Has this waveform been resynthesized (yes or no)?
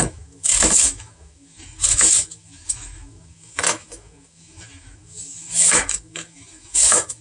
yes